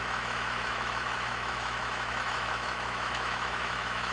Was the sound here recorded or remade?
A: remade